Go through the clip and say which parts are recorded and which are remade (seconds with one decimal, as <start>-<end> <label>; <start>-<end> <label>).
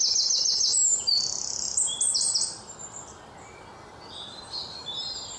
0.0-5.4 recorded